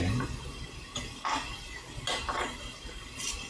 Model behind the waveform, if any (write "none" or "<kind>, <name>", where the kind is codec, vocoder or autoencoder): none